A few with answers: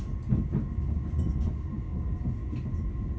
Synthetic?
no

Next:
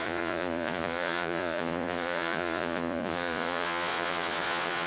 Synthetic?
yes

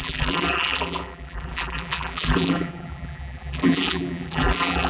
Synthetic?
yes